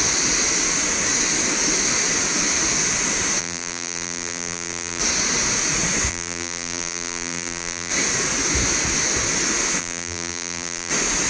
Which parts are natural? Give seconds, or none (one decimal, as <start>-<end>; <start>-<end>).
0.0-3.4; 5.0-6.1; 7.9-9.8; 10.9-11.3